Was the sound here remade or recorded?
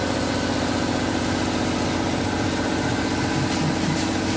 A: recorded